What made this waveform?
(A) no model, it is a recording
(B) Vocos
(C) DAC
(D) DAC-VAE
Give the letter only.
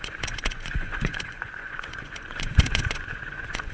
B